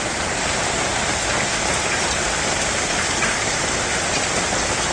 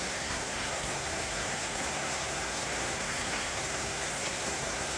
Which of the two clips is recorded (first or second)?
first